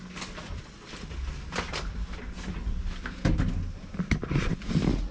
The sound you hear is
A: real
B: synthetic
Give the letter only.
A